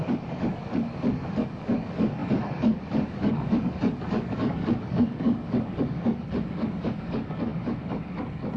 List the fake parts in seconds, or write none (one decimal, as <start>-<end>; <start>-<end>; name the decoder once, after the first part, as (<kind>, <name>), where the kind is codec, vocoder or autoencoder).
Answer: 0.0-8.6 (codec, DAC)